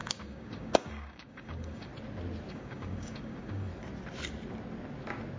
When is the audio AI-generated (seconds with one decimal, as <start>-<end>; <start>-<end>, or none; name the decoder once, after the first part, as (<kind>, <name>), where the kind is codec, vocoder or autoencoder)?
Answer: 0.0-1.9 (codec, DAC); 2.5-3.7